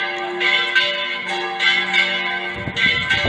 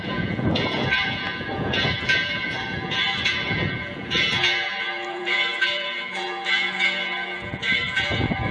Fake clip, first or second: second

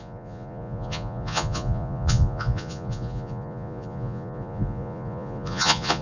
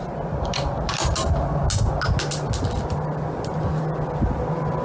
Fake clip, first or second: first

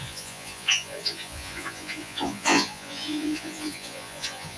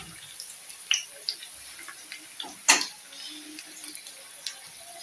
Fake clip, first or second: first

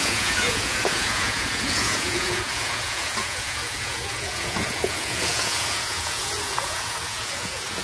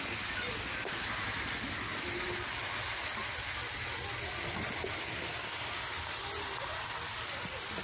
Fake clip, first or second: first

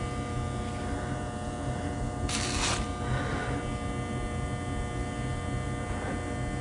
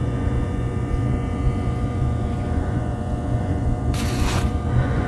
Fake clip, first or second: second